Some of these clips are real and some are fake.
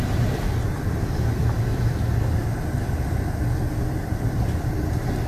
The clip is real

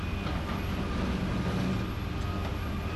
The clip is real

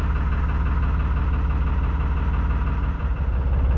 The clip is real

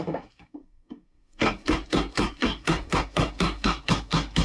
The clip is fake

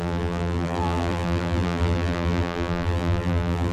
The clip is fake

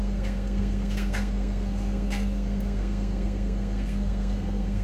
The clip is fake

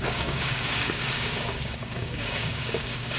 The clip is fake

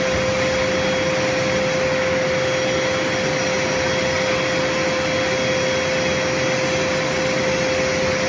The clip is real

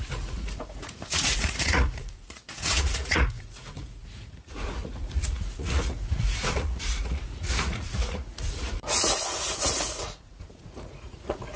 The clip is fake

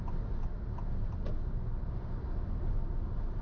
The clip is real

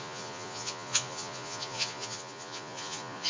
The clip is fake